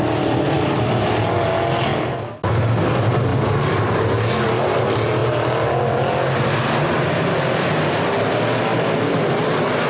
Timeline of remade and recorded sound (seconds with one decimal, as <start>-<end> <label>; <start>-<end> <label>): 0.0-9.9 recorded